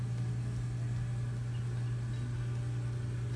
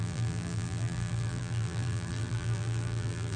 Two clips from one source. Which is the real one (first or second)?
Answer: first